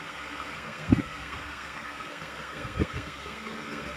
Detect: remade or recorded remade